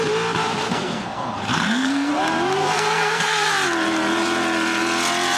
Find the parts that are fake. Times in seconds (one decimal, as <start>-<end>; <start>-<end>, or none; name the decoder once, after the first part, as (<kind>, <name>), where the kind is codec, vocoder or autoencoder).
0.6-2.1 (codec, SNAC); 2.6-3.5